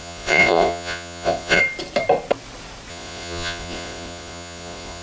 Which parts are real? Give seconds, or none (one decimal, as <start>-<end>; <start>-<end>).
1.6-2.9